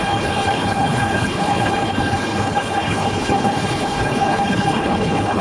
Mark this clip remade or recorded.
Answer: remade